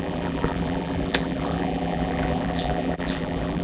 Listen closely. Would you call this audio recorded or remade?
remade